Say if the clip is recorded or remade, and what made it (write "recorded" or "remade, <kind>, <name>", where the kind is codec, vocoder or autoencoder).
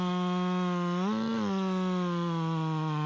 recorded